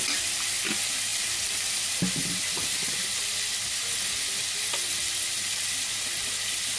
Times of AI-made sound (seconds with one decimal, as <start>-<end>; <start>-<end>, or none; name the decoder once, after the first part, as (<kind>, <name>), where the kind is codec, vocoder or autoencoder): none